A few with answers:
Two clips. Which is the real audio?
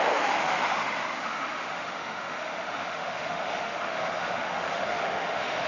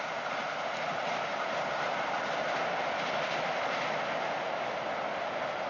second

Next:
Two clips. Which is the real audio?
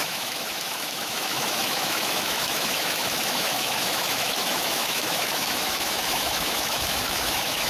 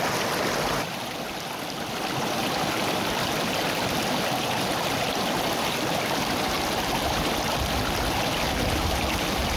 second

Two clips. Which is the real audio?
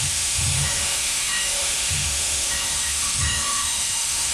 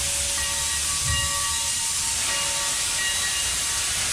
second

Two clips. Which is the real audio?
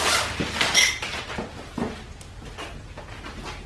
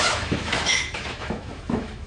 first